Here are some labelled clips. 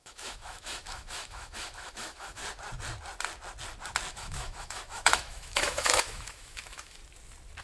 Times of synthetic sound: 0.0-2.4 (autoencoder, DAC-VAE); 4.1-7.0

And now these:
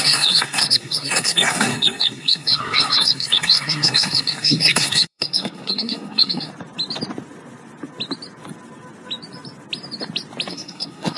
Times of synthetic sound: 0.0-6.5 (codec, SNAC); 10.5-11.2

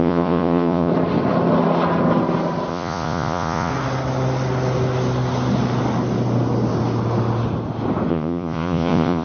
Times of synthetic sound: 0.0-0.9 (vocoder, Vocos); 2.7-3.7; 8.1-9.2

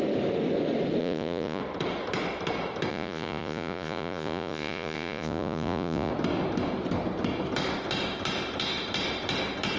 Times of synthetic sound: 1.0-1.6 (vocoder, Vocos); 2.9-6.1

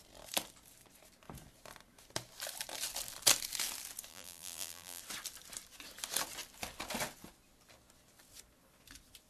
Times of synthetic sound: 4.1-5.0 (vocoder, BigVGAN v2)